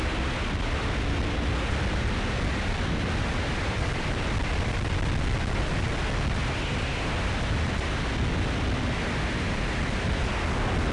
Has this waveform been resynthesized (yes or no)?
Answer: no